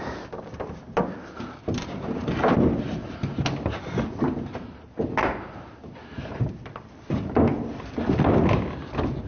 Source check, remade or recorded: recorded